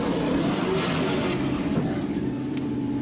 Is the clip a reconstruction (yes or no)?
yes